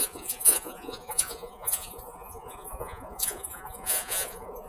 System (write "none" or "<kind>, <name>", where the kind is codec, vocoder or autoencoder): vocoder, Vocos